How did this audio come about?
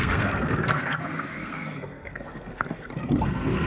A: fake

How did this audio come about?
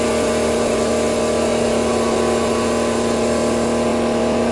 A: real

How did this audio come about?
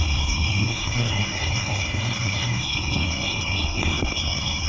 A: fake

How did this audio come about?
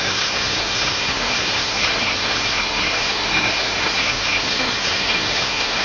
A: fake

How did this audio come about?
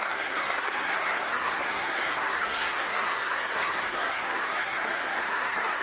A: fake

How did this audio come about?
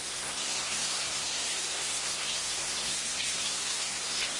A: fake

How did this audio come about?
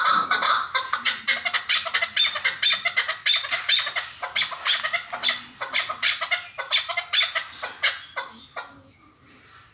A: real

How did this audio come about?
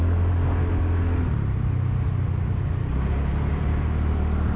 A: real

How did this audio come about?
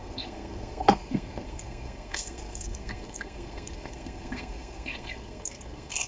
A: fake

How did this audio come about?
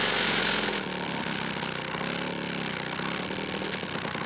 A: real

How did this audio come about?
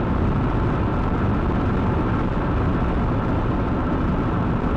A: real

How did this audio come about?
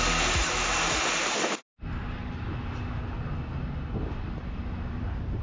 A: real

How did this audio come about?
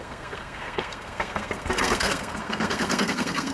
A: fake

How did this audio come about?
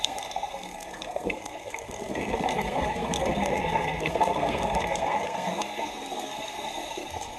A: fake